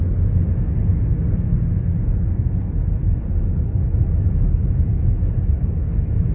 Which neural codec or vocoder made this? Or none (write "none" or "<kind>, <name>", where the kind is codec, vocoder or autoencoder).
none